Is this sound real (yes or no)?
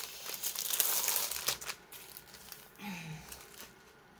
yes